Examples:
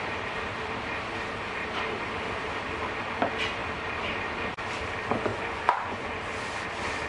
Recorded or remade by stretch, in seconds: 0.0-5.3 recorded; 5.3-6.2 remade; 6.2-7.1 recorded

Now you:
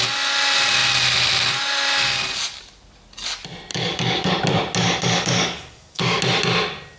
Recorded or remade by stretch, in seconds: 0.0-3.7 recorded; 3.7-4.3 remade; 4.3-4.8 recorded; 4.8-6.2 remade; 6.2-7.0 recorded